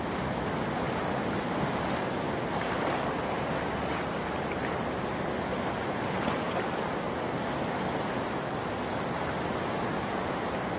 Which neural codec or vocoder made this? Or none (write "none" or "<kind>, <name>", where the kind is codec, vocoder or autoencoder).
vocoder, BigVGAN v2